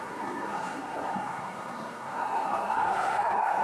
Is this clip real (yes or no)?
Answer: no